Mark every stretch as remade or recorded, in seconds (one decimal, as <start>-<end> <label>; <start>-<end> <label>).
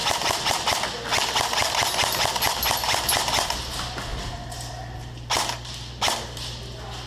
0.0-7.1 recorded